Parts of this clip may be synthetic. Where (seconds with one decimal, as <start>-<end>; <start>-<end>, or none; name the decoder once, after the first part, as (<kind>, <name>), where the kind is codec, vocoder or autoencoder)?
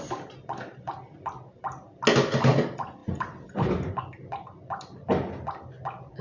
none